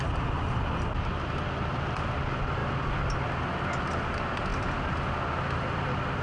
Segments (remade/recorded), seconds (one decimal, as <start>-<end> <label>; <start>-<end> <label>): 0.0-6.2 recorded